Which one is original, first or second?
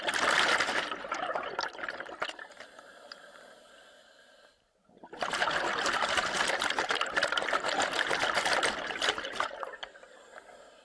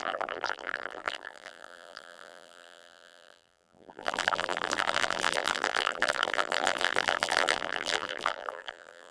first